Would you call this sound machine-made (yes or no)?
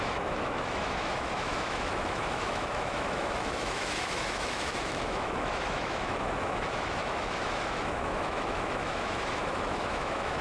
yes